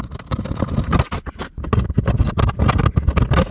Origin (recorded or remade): recorded